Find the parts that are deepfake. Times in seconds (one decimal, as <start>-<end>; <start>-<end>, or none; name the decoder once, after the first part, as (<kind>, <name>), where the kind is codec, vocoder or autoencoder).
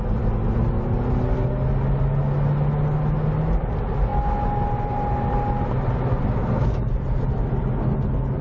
none